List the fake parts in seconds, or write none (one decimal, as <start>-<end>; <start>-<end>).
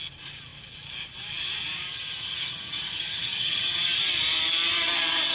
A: 1.9-4.0